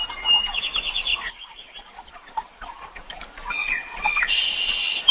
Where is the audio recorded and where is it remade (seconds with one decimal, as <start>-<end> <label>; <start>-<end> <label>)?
0.0-1.1 recorded; 1.1-3.1 remade; 3.1-3.6 recorded; 3.6-4.2 remade; 4.2-5.1 recorded